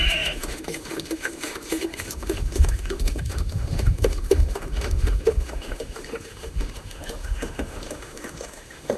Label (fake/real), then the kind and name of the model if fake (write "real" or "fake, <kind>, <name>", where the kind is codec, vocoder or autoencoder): fake, autoencoder, DAC-VAE